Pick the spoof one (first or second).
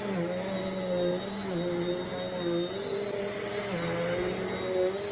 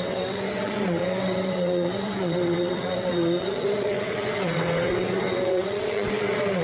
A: second